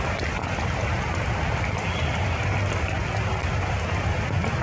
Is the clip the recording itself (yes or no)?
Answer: yes